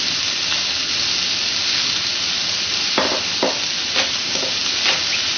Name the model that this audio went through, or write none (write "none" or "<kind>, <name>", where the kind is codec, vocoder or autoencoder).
none